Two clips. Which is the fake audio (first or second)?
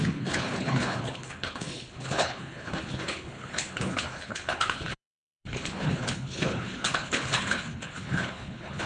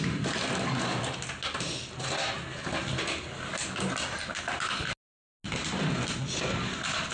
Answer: first